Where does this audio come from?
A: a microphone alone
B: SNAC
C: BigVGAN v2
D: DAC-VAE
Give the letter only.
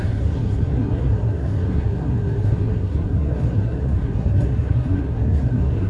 B